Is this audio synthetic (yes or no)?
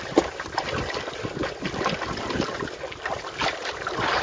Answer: no